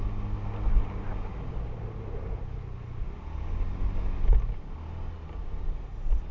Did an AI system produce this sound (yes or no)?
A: no